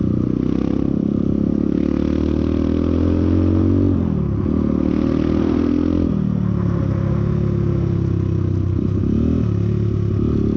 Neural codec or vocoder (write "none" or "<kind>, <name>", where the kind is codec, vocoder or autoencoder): none